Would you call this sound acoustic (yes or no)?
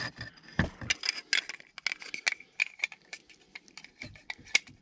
yes